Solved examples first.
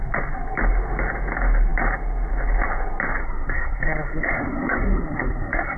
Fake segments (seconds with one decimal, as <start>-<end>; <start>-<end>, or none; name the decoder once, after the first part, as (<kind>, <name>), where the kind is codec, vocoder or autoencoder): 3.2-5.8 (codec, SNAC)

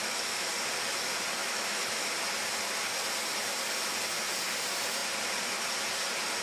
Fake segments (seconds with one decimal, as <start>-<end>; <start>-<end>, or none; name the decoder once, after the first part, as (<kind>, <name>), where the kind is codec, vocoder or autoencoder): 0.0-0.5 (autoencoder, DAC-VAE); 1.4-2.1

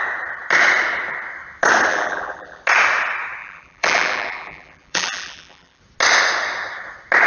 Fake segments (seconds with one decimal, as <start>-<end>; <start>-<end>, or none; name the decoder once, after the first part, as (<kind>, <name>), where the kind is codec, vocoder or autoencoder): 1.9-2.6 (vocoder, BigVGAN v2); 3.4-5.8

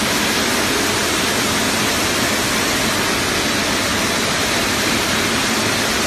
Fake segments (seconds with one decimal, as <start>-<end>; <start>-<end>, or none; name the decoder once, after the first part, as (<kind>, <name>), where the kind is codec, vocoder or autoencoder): 3.9-5.2 (vocoder, BigVGAN v2)